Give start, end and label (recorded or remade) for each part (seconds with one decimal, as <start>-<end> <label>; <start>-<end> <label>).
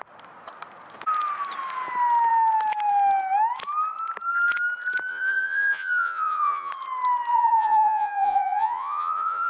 0.0-5.1 recorded; 5.1-6.7 remade; 6.7-7.3 recorded; 7.3-9.5 remade